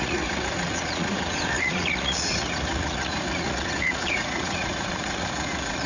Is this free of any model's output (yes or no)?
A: no